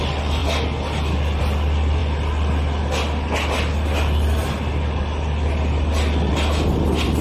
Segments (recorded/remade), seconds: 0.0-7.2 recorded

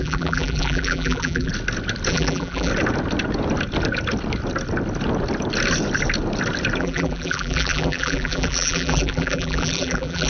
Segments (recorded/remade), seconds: 0.0-1.5 remade; 1.5-2.1 recorded; 2.1-2.7 remade; 2.7-6.8 recorded; 6.8-10.3 remade

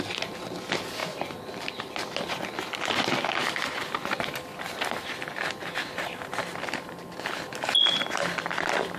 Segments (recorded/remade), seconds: 0.0-9.0 recorded

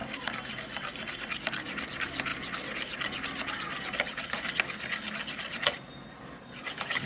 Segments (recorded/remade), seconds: 0.0-7.1 recorded

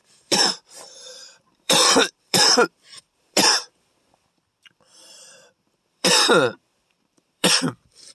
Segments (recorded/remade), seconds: 0.0-3.4 remade; 3.4-4.7 recorded; 4.7-8.1 remade

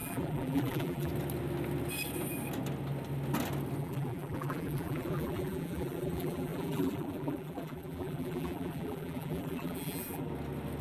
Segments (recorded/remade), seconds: 0.0-1.1 remade; 1.1-3.8 recorded; 3.8-10.3 remade; 10.3-10.8 recorded

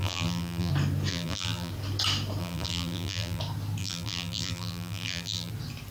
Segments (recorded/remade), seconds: 0.0-0.7 remade; 0.7-1.1 recorded; 1.1-1.7 remade; 1.7-2.4 recorded; 2.4-3.4 remade; 3.4-3.8 recorded; 3.8-5.5 remade; 5.5-5.9 recorded

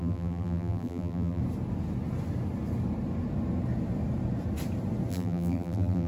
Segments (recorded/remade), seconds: 0.0-1.4 remade; 1.4-5.1 recorded; 5.1-6.1 remade